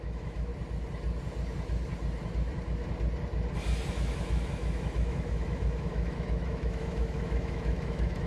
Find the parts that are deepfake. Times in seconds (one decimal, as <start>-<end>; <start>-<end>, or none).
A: 0.0-0.5; 3.9-8.3